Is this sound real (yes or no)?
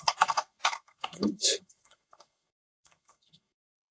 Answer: no